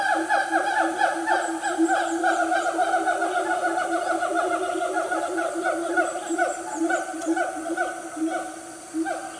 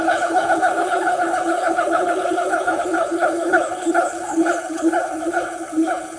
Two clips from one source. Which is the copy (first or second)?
second